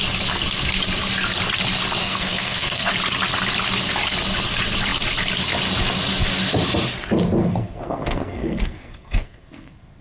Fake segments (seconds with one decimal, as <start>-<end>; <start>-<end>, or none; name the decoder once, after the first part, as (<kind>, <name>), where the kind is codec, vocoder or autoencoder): 2.0-2.9 (codec, SNAC); 7.4-10.0